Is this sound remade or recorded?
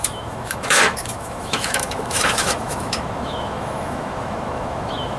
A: remade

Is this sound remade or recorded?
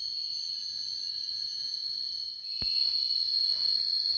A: recorded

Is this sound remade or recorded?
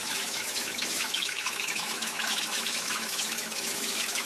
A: remade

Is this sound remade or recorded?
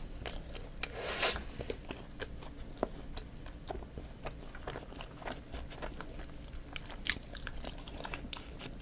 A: recorded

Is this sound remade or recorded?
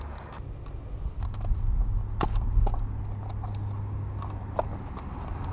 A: recorded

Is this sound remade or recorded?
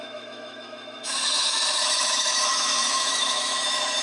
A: remade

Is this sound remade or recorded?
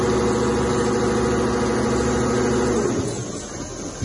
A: recorded